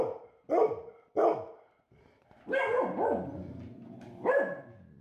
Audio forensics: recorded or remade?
recorded